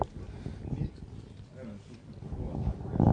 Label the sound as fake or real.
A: real